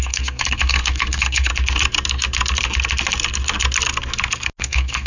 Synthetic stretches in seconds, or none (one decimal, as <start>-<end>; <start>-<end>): 0.0-1.5; 4.6-5.1